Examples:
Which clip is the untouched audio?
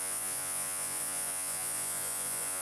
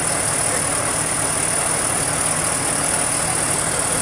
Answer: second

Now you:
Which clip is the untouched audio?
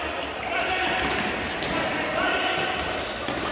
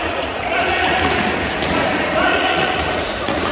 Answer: first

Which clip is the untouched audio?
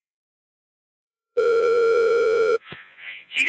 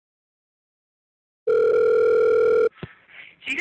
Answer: second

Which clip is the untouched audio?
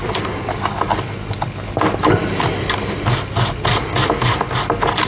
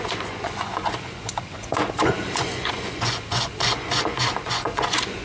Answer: first